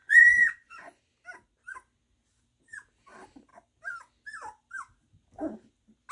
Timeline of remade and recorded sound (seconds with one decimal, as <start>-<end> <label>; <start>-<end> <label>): 0.0-1.0 remade; 1.0-6.1 recorded